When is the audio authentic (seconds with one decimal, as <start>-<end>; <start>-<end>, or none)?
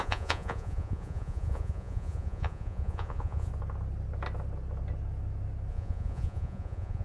3.5-5.7